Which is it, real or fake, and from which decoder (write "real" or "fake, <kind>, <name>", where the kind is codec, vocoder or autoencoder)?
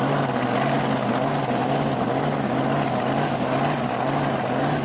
real